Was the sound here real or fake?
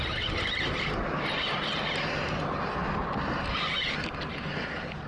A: real